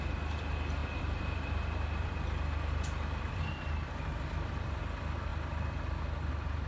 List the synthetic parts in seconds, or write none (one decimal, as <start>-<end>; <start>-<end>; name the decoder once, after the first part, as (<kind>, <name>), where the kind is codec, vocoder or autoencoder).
0.8-4.8 (vocoder, BigVGAN v2)

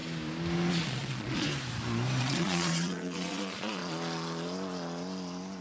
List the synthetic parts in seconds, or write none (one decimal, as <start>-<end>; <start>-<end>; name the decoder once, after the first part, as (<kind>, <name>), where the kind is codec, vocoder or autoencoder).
0.7-1.5 (vocoder, Vocos); 2.2-3.8

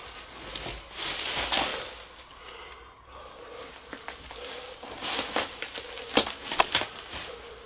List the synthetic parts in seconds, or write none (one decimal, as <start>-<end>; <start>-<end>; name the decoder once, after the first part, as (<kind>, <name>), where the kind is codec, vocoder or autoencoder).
none

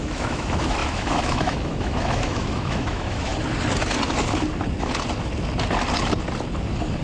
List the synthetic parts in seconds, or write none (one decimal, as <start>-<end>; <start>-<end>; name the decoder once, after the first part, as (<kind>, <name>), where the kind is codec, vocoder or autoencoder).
0.0-3.3 (autoencoder, DAC-VAE)

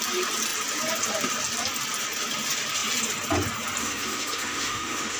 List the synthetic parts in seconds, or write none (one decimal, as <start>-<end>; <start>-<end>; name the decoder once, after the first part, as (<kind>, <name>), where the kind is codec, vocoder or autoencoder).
3.8-5.2 (autoencoder, DAC-VAE)

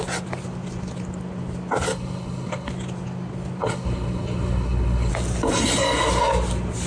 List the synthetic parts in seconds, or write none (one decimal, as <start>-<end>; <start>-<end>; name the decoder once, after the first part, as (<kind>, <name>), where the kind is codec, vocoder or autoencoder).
1.9-2.7 (codec, HILCodec); 3.6-5.1

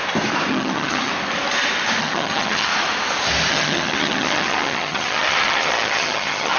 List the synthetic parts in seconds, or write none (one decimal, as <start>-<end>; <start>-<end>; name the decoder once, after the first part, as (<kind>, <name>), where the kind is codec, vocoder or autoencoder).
0.5-1.1 (vocoder, HiFi-GAN); 2.0-2.7; 3.5-6.6